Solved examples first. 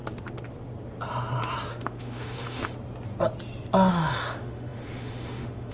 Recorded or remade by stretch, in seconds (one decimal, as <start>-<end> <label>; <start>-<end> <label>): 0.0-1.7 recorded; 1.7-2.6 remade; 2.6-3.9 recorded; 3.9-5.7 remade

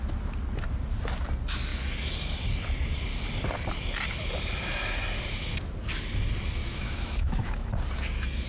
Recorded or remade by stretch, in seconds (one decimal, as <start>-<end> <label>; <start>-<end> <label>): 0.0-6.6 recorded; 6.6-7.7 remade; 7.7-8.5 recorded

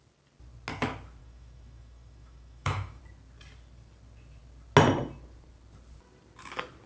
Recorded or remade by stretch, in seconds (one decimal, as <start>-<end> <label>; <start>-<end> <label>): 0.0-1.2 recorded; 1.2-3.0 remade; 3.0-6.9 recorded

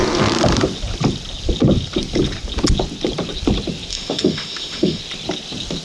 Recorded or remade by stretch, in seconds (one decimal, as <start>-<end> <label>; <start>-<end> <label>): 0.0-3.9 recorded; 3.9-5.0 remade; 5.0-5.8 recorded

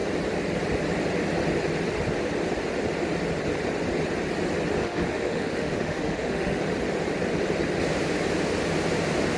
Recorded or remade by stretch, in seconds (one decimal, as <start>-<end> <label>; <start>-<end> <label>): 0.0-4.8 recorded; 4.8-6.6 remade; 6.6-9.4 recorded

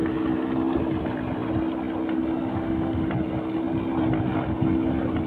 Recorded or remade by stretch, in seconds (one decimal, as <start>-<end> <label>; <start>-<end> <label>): 0.0-2.5 recorded; 2.5-3.1 remade; 3.1-5.3 recorded

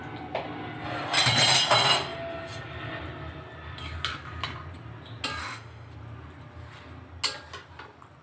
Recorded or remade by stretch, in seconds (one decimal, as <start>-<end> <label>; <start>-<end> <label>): 0.0-5.4 recorded; 5.4-5.9 remade; 5.9-8.2 recorded